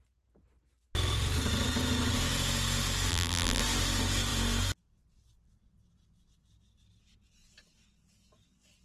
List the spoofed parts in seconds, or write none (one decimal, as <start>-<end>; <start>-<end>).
3.1-3.6